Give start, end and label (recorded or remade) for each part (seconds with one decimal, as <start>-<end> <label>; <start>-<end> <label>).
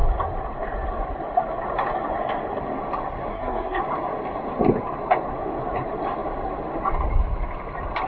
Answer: 0.0-3.3 recorded; 3.3-3.8 remade; 3.8-8.1 recorded